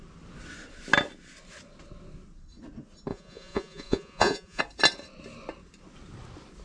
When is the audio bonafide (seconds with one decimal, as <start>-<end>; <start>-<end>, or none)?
0.0-3.1; 4.6-6.6